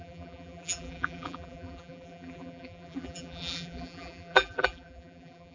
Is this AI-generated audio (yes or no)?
yes